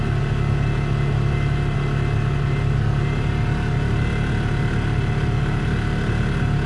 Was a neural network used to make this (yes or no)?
no